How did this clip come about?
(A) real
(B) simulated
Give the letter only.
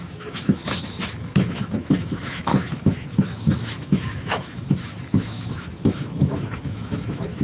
B